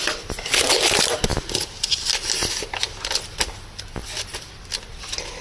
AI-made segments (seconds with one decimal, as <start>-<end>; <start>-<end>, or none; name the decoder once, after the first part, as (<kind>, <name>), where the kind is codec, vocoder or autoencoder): none